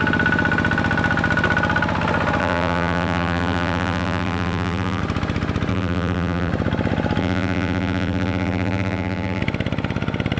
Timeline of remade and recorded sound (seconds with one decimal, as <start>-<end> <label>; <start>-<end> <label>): 0.0-2.4 recorded; 2.4-5.0 remade; 5.0-5.7 recorded; 5.7-6.5 remade; 6.5-7.2 recorded; 7.2-9.4 remade; 9.4-10.4 recorded